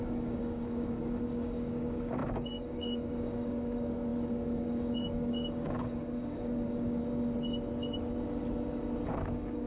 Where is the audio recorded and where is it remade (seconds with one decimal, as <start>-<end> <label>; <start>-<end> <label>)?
0.0-7.0 remade; 7.0-9.1 recorded; 9.1-9.7 remade